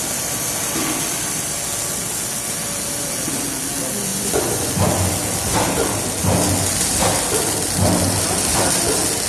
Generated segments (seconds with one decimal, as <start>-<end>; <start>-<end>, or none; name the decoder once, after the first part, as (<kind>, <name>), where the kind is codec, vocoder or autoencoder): 4.1-4.7 (vocoder, Vocos)